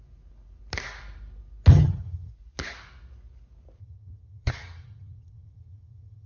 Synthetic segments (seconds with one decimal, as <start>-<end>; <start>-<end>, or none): 1.7-2.3; 3.8-6.3